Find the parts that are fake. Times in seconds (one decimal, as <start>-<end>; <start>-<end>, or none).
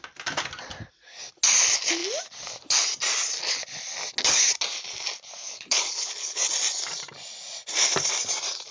5.4-6.5